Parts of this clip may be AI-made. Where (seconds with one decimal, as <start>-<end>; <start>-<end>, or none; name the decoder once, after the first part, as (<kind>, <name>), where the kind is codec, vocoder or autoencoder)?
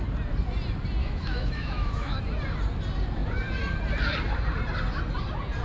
1.0-2.2 (autoencoder, DAC-VAE)